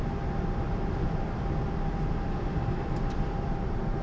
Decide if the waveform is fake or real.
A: real